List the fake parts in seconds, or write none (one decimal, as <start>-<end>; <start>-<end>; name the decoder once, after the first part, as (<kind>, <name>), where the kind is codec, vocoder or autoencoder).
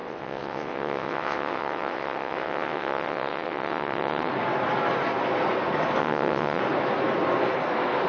0.0-4.3 (vocoder, WaveNeXt); 6.0-6.6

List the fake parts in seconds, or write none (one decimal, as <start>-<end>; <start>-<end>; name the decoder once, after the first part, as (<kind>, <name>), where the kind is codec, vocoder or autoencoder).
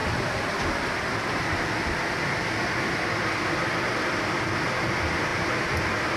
none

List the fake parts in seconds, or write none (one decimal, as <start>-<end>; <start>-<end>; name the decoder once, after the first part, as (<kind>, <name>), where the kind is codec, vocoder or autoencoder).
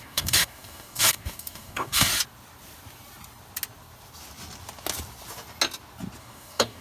0.0-2.1 (codec, DAC); 6.2-6.8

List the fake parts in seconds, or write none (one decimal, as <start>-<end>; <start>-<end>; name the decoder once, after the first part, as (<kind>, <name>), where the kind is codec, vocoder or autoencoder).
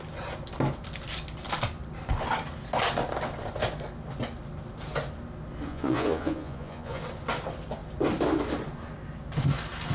5.7-7.0 (vocoder, Vocos)